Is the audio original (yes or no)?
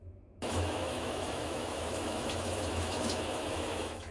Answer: no